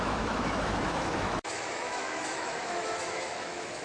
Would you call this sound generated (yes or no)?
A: yes